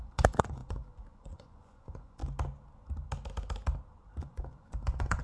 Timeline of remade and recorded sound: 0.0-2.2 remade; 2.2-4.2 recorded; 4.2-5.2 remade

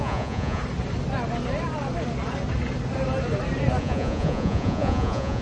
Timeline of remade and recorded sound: 0.0-0.6 remade; 0.6-3.8 recorded; 3.8-5.4 remade

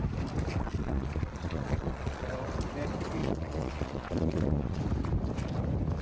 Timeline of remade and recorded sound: 0.0-0.6 recorded; 0.6-2.3 remade; 2.3-3.2 recorded; 3.2-4.8 remade; 4.8-6.0 recorded

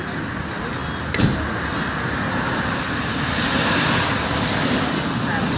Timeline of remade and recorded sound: 0.0-5.6 recorded

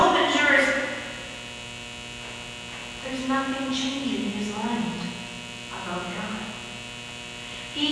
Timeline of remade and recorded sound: 0.0-7.9 recorded

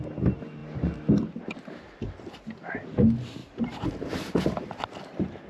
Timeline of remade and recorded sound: 0.0-3.4 recorded; 3.4-4.3 remade; 4.3-5.5 recorded